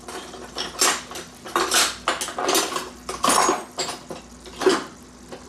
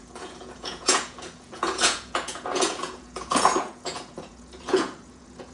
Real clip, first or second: first